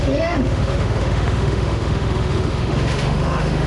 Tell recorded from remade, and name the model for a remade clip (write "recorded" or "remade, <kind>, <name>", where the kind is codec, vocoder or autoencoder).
remade, autoencoder, DAC-VAE